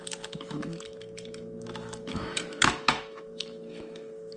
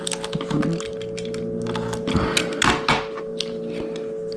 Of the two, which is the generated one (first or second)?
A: first